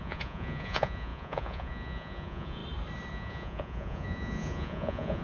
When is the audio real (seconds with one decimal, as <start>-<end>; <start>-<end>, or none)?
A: 2.6-3.1